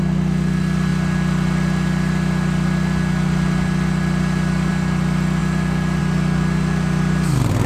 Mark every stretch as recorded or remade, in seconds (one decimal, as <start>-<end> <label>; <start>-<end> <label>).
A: 0.0-7.7 recorded